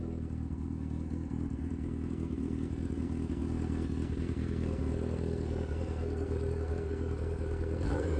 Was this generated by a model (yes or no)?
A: yes